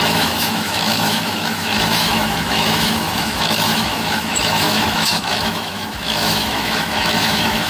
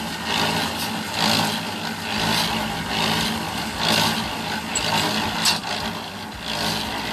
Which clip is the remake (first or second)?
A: first